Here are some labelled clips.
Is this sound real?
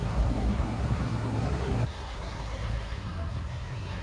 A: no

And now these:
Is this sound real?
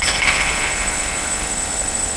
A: no